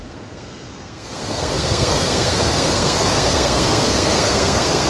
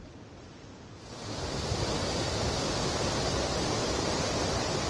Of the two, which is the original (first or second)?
second